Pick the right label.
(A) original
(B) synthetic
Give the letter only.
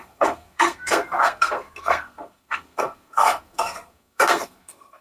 B